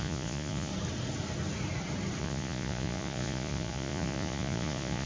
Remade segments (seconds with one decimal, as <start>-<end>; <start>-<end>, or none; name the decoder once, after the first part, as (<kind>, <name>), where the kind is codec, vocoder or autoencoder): 0.0-0.7 (vocoder, Vocos); 2.2-5.1